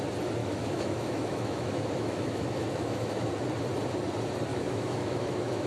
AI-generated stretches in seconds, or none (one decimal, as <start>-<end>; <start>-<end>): 0.4-3.3; 4.5-5.7